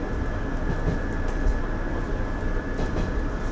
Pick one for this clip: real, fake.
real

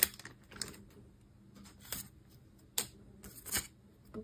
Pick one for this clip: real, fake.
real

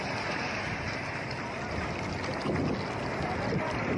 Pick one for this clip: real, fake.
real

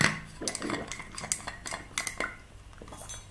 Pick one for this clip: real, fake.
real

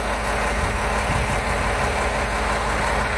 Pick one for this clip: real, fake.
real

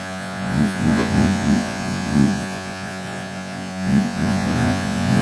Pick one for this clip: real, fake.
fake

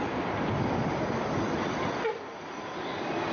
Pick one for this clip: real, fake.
fake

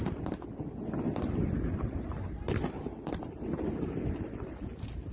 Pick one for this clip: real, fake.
real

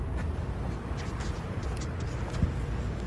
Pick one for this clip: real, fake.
real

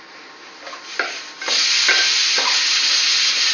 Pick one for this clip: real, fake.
real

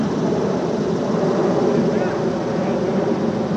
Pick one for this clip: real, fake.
real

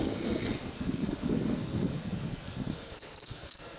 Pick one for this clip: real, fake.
fake